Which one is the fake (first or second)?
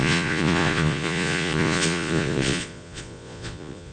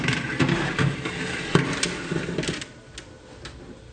first